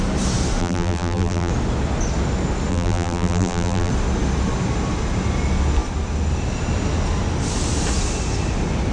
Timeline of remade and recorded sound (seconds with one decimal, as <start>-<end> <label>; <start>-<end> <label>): 0.0-0.6 recorded; 0.6-1.5 remade; 1.5-2.7 recorded; 2.7-3.9 remade; 3.9-8.9 recorded